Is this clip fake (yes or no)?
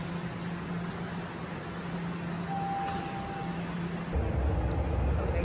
no